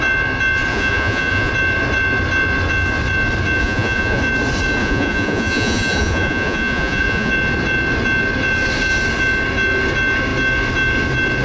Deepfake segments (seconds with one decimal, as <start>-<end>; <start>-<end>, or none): 0.7-1.5; 3.6-4.2; 4.8-7.3